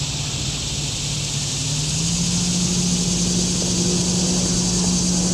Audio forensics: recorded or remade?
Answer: recorded